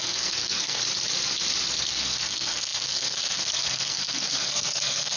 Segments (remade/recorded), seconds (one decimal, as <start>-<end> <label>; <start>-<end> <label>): 0.0-0.8 remade; 0.8-1.9 recorded; 1.9-5.2 remade